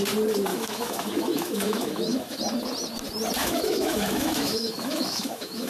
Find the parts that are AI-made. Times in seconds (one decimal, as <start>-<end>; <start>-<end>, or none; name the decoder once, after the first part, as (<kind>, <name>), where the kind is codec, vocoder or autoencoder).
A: 0.5-2.4 (autoencoder, DAC-VAE); 3.4-5.7